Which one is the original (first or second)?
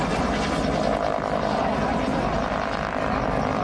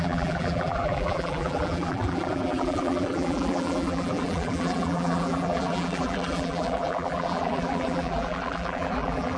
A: first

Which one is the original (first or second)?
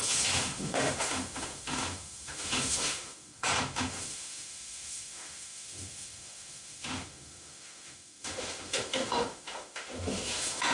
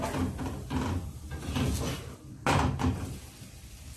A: second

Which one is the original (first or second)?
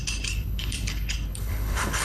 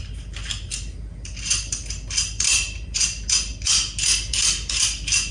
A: second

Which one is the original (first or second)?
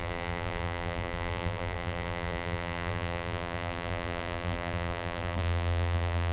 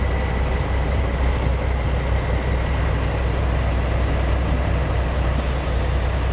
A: second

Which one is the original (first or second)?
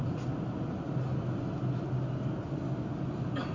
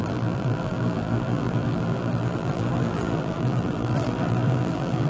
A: first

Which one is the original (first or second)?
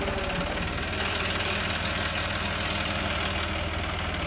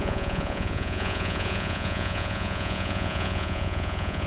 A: first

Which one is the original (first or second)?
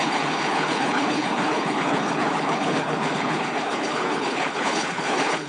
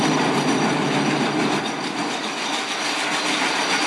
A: second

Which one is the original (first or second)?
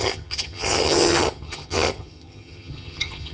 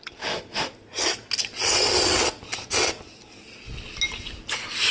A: second